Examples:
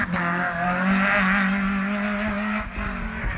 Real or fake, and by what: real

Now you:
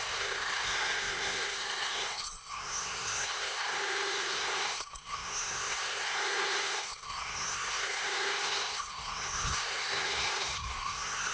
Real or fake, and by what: fake, codec, SNAC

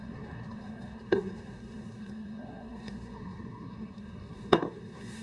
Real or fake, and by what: fake, codec, SNAC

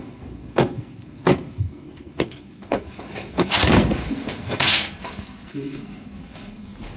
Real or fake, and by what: fake, codec, SNAC